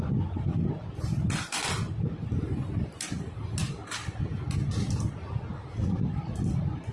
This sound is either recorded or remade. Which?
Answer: recorded